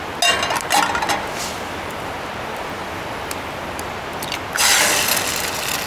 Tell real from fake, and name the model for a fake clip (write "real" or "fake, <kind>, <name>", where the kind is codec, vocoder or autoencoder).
real